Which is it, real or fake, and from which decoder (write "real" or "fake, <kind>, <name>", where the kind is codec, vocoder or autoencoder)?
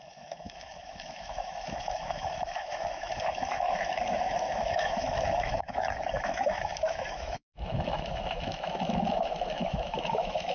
fake, autoencoder, DAC-VAE